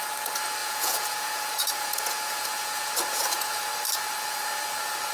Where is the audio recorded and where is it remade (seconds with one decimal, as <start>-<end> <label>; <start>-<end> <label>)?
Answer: 0.0-0.6 recorded; 0.6-3.7 remade; 3.7-5.1 recorded